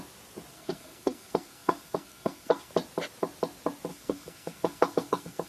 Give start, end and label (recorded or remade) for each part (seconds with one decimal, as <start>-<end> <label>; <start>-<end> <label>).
0.0-0.5 recorded; 0.5-2.7 remade; 2.7-3.9 recorded; 3.9-5.5 remade